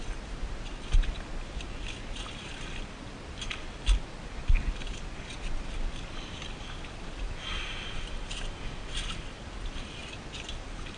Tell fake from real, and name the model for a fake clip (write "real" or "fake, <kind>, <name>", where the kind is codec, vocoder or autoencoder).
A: real